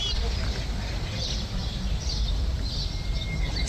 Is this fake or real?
real